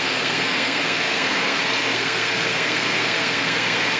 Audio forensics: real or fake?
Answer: fake